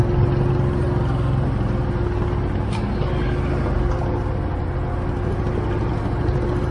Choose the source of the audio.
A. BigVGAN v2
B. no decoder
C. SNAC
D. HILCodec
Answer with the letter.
B